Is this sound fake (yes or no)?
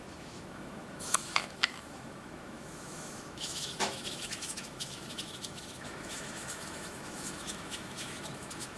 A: yes